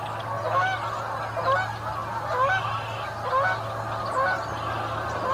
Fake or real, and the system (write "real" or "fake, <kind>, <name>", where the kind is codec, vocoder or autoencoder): real